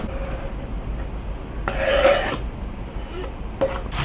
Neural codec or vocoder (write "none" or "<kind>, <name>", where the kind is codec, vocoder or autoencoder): none